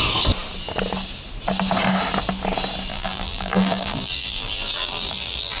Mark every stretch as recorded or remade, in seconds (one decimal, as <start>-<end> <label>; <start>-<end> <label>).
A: 0.0-2.9 recorded; 2.9-5.6 remade